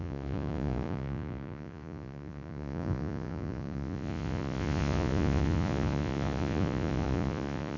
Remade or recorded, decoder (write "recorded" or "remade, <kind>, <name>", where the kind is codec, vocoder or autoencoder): remade, vocoder, Vocos